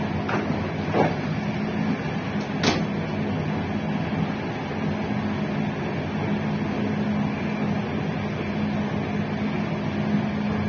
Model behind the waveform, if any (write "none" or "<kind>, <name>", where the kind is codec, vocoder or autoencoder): none